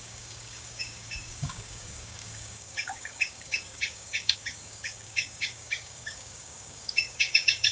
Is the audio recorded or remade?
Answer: remade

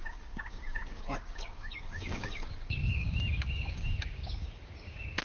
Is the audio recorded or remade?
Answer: remade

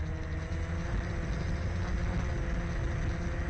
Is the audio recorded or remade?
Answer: recorded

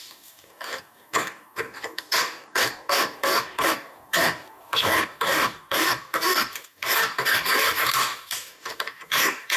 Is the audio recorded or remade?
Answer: remade